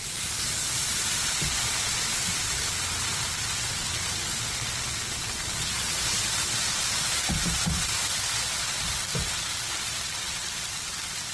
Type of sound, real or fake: fake